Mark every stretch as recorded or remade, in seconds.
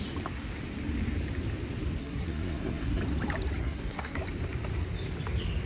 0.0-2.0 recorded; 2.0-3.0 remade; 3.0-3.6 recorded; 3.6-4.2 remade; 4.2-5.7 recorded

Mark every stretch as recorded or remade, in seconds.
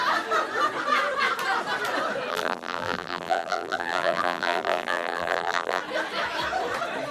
0.0-2.3 recorded; 2.3-5.8 remade; 5.8-7.1 recorded